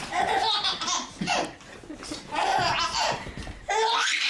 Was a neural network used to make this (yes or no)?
yes